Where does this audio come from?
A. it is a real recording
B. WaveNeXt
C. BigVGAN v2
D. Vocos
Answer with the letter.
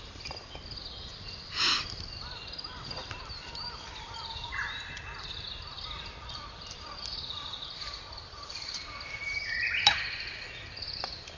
C